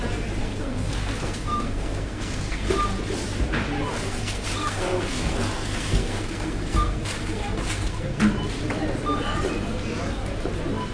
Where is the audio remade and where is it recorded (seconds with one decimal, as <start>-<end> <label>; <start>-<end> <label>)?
0.0-0.4 recorded; 0.4-2.7 remade; 2.7-3.9 recorded; 3.9-8.2 remade; 8.2-10.9 recorded